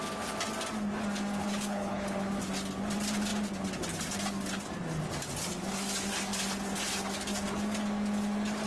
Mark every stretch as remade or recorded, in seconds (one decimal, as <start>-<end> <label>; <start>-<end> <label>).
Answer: 0.0-1.4 recorded; 1.4-2.3 remade; 2.3-8.7 recorded